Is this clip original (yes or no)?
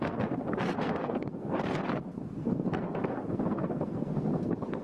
no